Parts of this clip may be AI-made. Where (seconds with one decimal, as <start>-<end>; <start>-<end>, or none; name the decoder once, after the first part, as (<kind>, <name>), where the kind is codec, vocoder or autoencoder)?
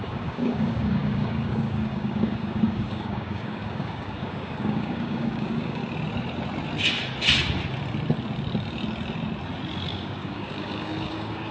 0.0-5.8 (codec, DAC); 9.9-11.5